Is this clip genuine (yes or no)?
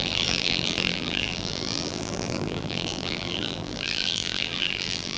no